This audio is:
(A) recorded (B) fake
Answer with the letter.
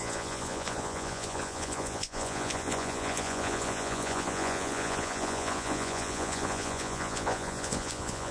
B